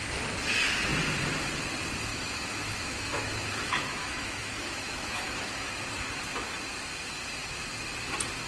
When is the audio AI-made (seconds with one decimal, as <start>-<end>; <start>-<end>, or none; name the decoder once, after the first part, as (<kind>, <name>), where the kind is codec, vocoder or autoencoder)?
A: 2.1-5.8 (autoencoder, DAC-VAE)